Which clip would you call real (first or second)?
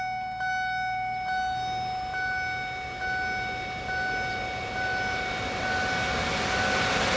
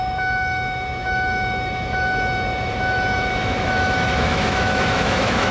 first